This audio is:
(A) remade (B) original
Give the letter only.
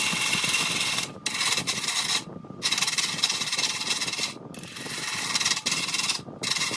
B